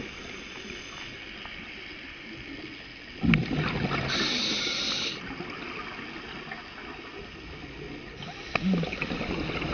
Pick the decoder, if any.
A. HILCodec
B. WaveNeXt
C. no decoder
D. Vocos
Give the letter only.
C